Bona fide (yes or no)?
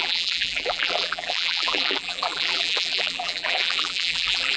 no